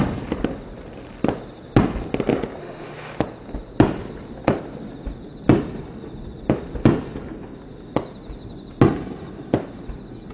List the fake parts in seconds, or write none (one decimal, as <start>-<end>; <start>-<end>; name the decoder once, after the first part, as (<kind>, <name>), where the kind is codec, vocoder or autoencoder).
2.6-3.2 (autoencoder, DAC-VAE)